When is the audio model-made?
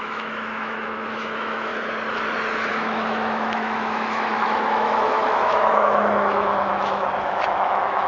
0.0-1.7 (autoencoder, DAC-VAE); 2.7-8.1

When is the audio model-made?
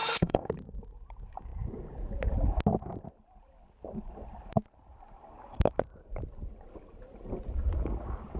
0.0-0.5 (autoencoder, DAC-VAE)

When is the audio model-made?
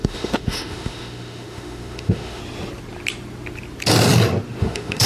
0.0-2.4 (autoencoder, DAC-VAE); 4.6-5.1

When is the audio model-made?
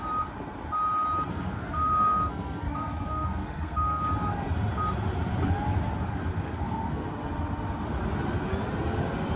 1.3-4.0 (codec, SNAC); 6.3-7.1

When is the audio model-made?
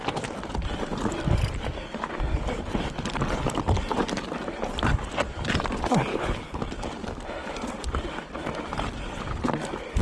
6.1-6.6 (codec, HILCodec)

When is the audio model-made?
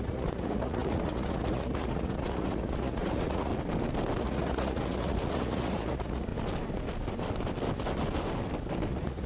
0.0-3.5 (vocoder, Vocos); 4.2-6.3; 8.9-9.3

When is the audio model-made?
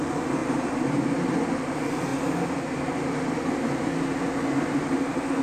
0.4-1.1 (vocoder, BigVGAN v2)